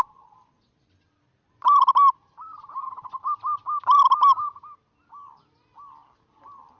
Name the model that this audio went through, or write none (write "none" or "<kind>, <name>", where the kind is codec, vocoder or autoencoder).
none